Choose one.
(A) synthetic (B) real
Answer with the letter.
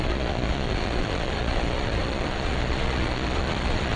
A